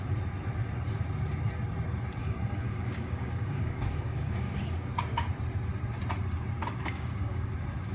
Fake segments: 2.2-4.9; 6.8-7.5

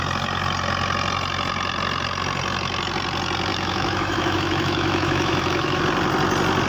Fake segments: 3.5-5.8

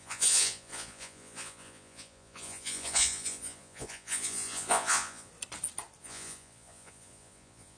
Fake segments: 0.0-5.3; 6.0-7.8

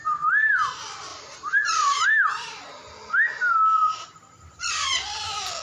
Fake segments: 1.1-2.7; 3.8-4.7

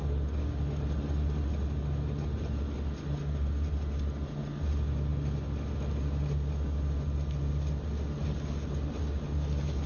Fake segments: none

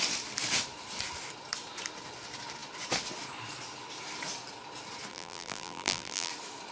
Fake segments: 5.1-6.3